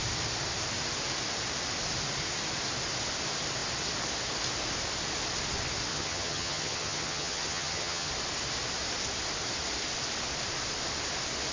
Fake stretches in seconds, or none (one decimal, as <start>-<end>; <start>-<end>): 5.9-8.1